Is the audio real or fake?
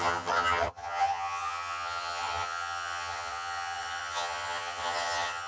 fake